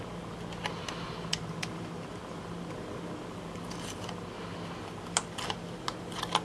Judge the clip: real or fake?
real